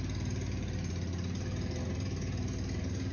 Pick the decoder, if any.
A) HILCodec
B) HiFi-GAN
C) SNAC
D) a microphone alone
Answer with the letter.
D